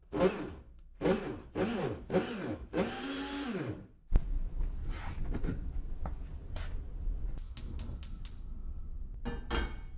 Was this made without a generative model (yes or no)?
yes